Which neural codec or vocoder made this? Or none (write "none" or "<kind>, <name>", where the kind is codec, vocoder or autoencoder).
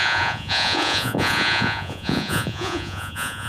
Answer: vocoder, Vocos